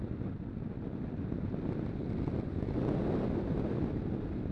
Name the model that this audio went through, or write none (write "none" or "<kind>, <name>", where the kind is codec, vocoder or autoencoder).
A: none